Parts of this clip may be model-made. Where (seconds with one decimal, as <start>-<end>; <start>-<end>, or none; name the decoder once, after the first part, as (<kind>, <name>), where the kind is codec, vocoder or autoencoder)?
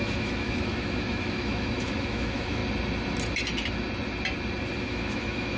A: 0.0-2.6 (autoencoder, DAC-VAE); 4.8-5.6